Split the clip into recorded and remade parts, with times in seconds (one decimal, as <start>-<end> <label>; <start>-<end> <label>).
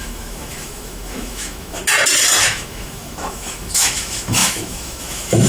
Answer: 0.0-1.8 remade; 1.8-2.4 recorded; 2.4-5.5 remade